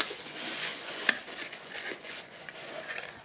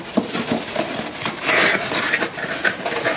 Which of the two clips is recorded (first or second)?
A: second